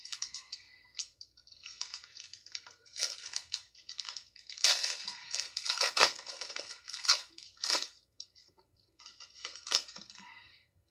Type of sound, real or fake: fake